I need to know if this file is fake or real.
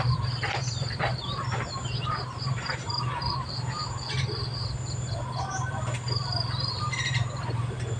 fake